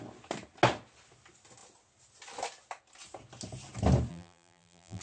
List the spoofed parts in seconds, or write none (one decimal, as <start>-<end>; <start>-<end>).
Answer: 4.1-5.0